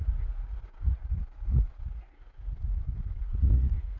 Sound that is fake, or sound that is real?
fake